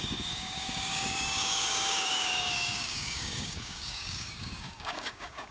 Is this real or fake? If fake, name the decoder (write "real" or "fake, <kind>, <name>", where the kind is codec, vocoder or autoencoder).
fake, codec, DAC